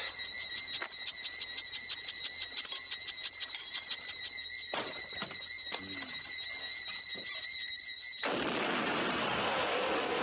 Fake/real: real